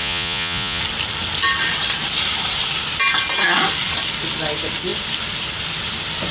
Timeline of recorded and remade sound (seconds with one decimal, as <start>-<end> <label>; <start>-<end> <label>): 0.0-0.8 remade; 0.8-6.3 recorded